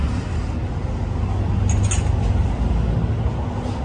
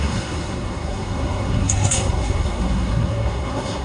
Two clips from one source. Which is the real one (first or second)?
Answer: first